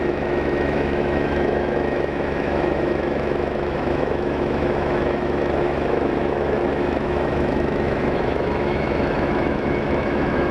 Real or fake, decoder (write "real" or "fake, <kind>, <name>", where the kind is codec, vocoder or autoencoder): fake, autoencoder, DAC-VAE